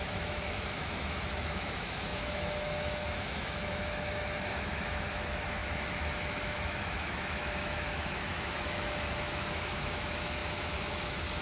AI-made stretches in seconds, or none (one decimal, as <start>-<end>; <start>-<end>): 0.0-11.4